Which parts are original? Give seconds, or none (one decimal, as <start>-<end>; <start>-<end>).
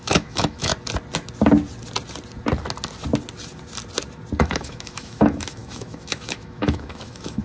0.7-4.4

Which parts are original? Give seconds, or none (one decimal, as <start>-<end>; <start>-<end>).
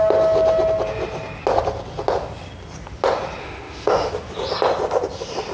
0.0-3.4; 4.1-5.5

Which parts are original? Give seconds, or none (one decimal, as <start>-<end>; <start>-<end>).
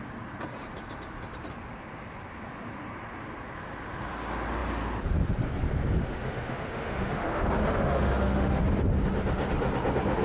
0.0-6.0; 8.6-10.2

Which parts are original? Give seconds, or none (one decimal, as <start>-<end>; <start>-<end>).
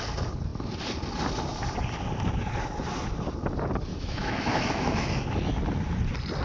0.0-3.9; 5.1-6.4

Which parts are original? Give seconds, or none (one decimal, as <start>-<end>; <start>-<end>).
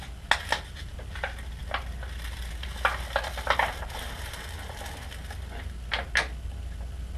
0.0-7.2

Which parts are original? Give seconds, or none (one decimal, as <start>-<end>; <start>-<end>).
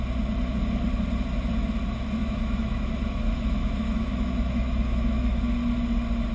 0.0-2.2; 5.4-6.3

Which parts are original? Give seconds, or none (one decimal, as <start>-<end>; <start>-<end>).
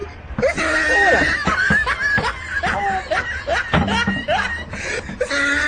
0.0-5.7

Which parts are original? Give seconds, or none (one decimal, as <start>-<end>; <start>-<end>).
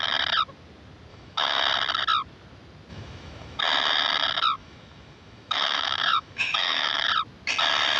0.0-1.1; 1.6-2.9; 3.6-4.6; 7.1-8.0